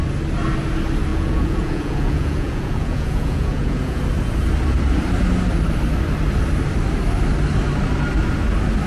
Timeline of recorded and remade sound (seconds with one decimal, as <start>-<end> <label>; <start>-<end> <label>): 0.0-1.1 recorded; 1.1-4.0 remade; 4.0-8.9 recorded